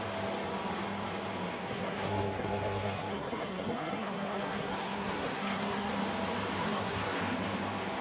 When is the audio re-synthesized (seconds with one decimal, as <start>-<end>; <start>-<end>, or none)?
1.6-5.9; 6.6-7.2